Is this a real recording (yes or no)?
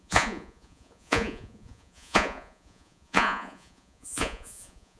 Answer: no